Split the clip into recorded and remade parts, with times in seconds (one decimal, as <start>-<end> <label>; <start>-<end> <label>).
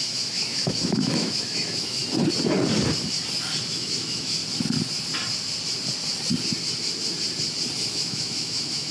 0.0-2.0 remade; 2.0-3.7 recorded; 3.7-4.4 remade; 4.4-7.9 recorded; 7.9-8.9 remade